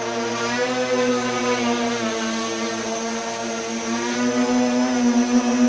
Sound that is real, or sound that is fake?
real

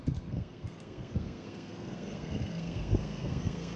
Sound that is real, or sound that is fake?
fake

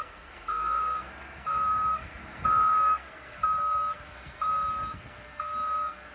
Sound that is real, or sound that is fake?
fake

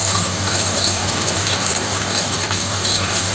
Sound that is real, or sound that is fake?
fake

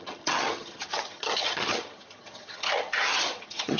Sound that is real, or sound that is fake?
fake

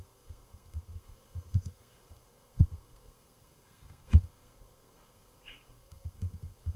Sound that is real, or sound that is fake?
fake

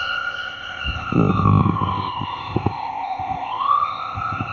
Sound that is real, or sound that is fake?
fake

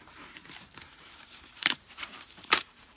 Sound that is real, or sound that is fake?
fake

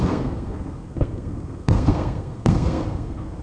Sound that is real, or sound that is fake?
fake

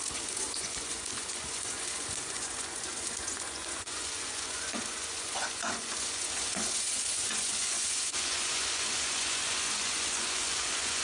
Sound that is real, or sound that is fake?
fake